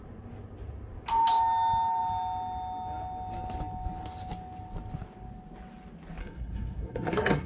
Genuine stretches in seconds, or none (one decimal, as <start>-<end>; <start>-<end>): 0.0-6.2